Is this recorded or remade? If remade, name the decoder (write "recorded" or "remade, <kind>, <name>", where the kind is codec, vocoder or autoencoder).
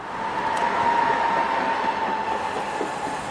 recorded